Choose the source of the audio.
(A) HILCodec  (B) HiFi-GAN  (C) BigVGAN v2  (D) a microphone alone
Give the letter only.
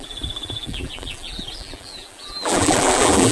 C